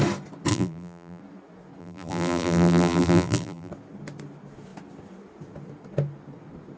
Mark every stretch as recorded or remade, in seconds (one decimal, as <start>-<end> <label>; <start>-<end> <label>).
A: 0.0-0.5 recorded; 0.5-1.2 remade; 1.2-1.8 recorded; 1.8-3.7 remade; 3.7-6.8 recorded